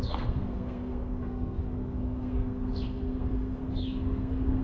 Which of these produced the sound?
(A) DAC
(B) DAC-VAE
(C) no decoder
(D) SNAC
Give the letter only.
D